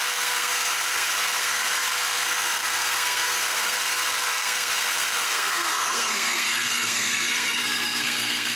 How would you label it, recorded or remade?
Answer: remade